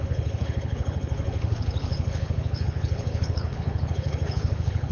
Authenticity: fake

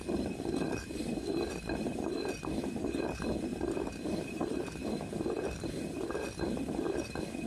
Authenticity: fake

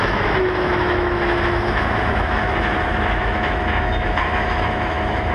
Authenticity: fake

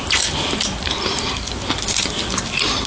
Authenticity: fake